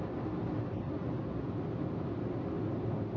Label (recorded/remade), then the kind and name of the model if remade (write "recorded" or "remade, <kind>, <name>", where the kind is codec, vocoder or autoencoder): recorded